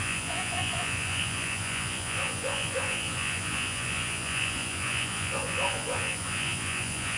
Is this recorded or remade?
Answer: remade